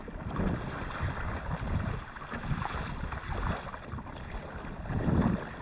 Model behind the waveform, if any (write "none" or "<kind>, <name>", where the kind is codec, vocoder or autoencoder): none